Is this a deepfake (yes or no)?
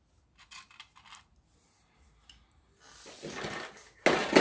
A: no